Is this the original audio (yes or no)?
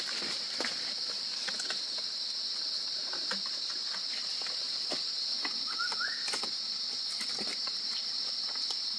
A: yes